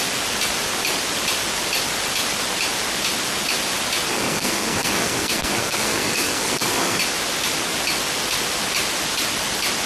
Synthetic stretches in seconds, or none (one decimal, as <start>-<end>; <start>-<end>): 4.1-7.0